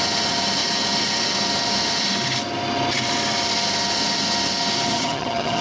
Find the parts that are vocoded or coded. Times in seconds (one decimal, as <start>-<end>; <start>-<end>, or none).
4.9-5.6